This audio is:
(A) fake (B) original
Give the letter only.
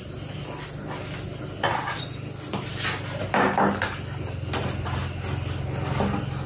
B